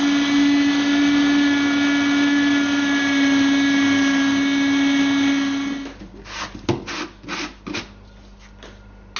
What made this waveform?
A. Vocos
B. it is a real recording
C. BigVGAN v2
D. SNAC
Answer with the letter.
B